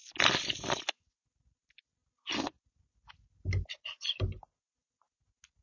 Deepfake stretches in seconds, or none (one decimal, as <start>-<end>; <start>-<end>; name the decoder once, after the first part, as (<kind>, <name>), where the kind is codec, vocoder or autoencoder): none